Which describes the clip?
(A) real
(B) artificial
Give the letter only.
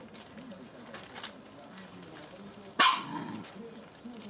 A